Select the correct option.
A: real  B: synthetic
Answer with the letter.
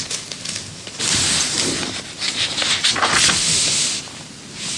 A